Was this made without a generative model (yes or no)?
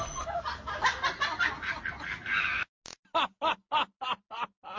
yes